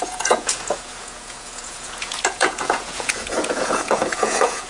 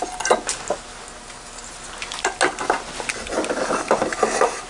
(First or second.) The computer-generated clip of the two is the first